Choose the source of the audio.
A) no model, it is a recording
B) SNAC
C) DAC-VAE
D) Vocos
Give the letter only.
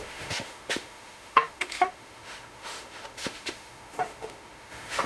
C